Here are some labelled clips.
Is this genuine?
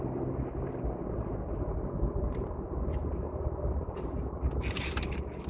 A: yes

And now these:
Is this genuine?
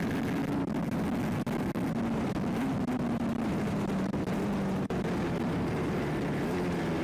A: yes